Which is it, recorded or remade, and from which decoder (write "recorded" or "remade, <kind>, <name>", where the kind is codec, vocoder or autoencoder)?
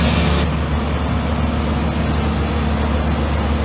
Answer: recorded